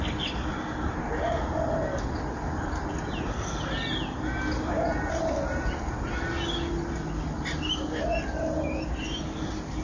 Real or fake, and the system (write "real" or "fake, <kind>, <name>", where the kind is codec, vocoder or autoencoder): real